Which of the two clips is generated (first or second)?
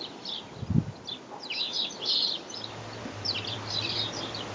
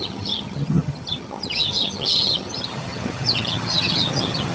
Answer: second